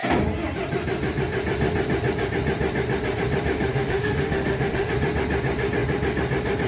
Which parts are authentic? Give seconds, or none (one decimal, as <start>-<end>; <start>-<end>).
0.0-3.7; 4.9-6.7